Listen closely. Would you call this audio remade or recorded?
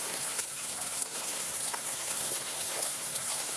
remade